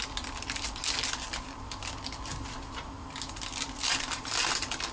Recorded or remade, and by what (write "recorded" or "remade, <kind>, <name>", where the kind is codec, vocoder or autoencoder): recorded